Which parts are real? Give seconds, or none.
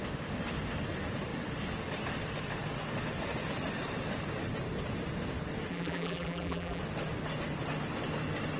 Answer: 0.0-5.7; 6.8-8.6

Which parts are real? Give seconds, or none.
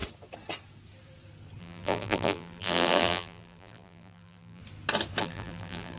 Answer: 0.0-1.6; 4.6-5.2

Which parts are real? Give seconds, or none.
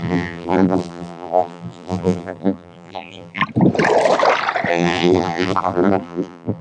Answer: 3.4-4.7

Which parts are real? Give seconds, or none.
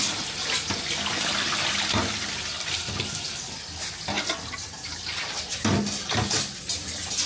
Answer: 0.0-7.3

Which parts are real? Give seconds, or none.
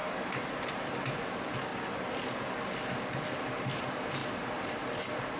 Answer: 1.7-3.8; 4.2-5.4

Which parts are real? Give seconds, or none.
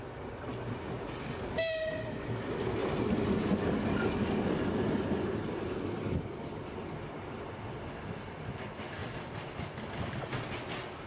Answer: 0.0-9.0; 10.6-11.1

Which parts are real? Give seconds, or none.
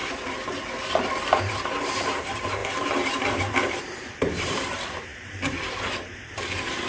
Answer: 0.0-1.4